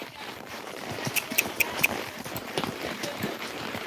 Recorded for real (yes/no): no